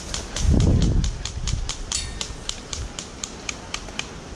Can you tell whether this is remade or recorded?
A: recorded